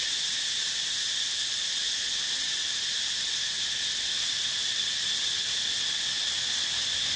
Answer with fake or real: real